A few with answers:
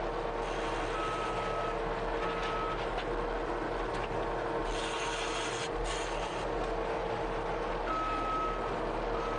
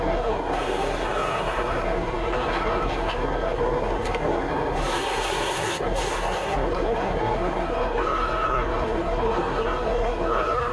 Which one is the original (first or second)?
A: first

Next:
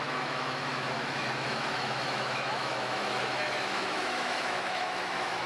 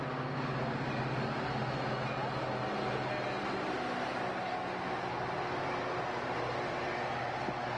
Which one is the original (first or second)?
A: second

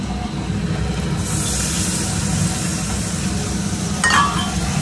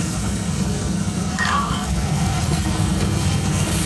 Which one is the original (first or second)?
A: first